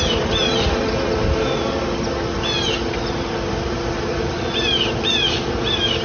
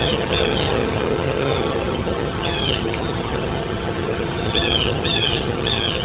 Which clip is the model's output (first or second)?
second